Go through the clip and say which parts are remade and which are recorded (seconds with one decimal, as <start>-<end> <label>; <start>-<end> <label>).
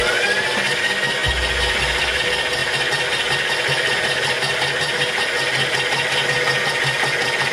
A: 0.0-1.2 recorded; 1.2-2.2 remade; 2.2-7.5 recorded